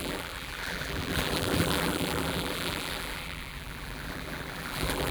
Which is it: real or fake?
fake